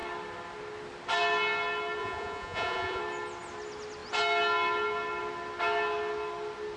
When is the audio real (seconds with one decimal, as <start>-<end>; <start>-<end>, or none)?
0.0-2.0; 3.0-6.8